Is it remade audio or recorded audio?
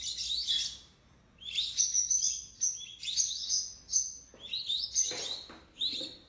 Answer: recorded